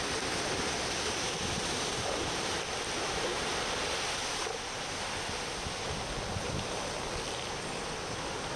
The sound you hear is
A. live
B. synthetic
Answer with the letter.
A